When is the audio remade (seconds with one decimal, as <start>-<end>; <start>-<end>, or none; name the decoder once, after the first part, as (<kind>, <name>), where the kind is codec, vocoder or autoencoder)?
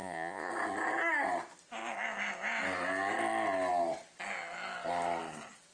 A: 0.0-0.5 (vocoder, Vocos)